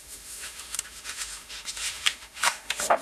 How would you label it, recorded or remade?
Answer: remade